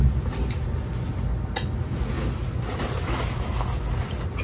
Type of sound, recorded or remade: recorded